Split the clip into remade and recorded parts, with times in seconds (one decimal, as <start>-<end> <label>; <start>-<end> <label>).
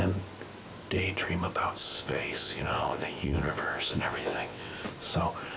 0.0-1.9 recorded; 1.9-4.7 remade; 4.7-5.6 recorded